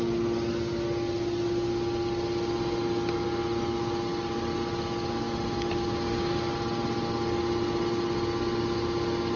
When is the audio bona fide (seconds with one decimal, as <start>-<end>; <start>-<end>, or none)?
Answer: 0.0-9.4